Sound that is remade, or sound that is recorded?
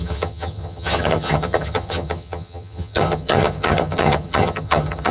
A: remade